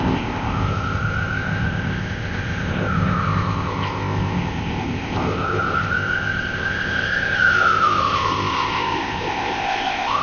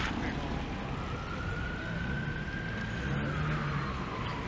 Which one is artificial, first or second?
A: first